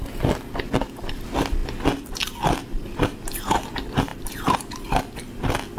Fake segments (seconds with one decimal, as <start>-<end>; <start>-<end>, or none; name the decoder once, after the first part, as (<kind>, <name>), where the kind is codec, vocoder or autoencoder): 4.1-5.0 (vocoder, BigVGAN v2)